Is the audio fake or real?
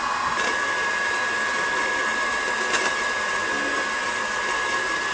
real